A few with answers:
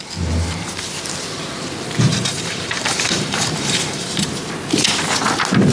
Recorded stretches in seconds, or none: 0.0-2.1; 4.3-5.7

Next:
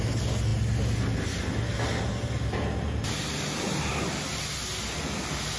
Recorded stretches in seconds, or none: 0.0-5.6